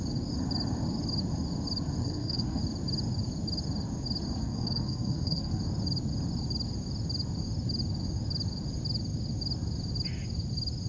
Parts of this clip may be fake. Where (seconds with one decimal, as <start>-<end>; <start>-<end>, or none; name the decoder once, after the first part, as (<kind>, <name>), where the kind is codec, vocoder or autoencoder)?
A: 2.0-2.6 (codec, SNAC); 4.4-5.6